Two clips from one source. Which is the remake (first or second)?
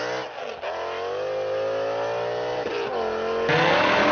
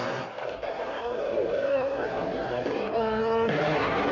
second